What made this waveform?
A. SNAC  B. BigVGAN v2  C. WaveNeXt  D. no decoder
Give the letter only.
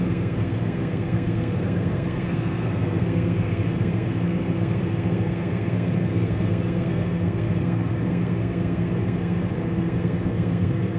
A